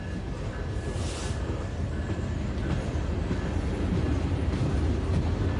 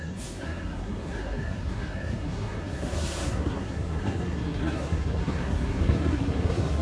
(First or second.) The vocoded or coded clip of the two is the second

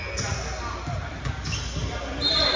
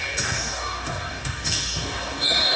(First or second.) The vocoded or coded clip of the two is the second